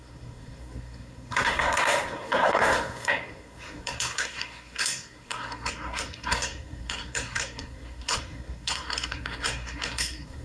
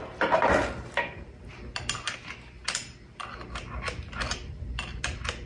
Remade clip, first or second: first